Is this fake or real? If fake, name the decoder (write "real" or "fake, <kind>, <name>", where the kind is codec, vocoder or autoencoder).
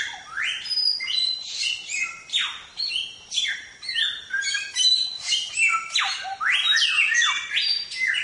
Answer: real